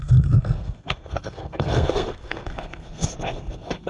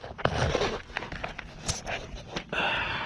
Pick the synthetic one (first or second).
first